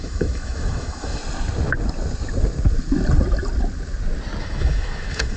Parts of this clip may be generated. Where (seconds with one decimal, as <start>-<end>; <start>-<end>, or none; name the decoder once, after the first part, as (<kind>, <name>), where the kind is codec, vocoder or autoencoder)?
0.0-1.2 (autoencoder, DAC-VAE); 4.4-5.4